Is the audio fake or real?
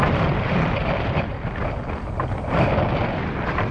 real